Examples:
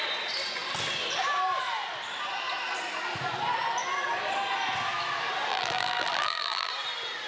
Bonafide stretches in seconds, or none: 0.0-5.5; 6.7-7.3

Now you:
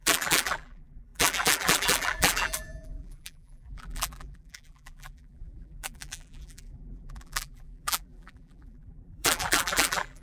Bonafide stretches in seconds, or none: none

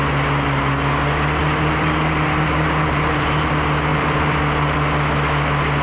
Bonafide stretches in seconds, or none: 0.0-1.4; 3.5-3.9; 4.4-5.8

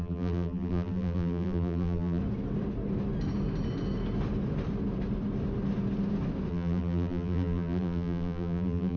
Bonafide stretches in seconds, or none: 2.2-6.5

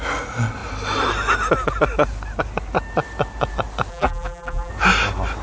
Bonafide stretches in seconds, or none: 0.0-3.9; 4.7-5.4

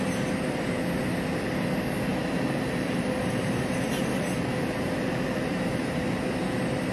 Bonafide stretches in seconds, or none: 0.0-2.1; 6.2-6.9